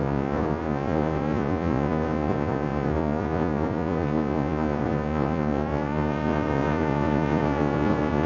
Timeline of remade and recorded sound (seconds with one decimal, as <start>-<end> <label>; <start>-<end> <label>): 0.0-8.3 remade